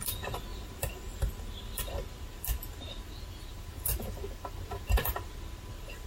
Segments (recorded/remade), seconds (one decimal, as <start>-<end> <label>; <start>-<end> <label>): 0.0-0.5 recorded; 0.5-1.3 remade; 1.3-3.5 recorded; 3.5-5.3 remade; 5.3-6.1 recorded